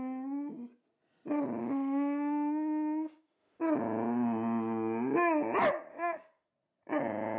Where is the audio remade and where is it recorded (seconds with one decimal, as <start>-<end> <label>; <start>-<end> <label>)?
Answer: 0.0-1.6 recorded; 1.6-3.6 remade; 3.6-5.9 recorded; 5.9-6.5 remade; 6.5-7.4 recorded